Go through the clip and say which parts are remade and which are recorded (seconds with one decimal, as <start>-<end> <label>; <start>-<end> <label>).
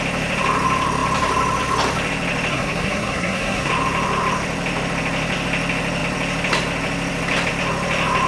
0.0-2.5 recorded; 2.5-3.7 remade; 3.7-8.3 recorded